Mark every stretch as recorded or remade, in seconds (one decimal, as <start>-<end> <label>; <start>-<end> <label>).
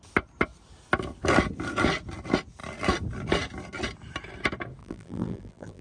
0.0-4.8 recorded; 4.8-5.8 remade